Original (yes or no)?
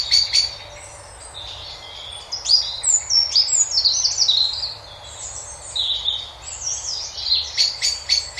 yes